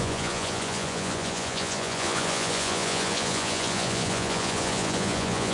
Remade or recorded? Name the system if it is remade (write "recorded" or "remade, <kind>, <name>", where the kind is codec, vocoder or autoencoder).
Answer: remade, vocoder, Vocos